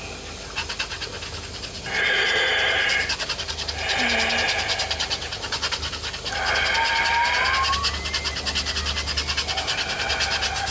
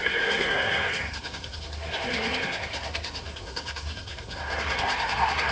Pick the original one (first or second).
first